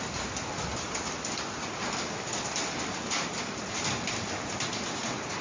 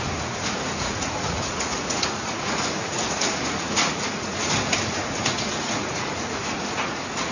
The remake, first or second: second